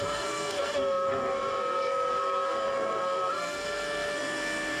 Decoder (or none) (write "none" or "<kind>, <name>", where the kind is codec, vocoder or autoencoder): codec, SNAC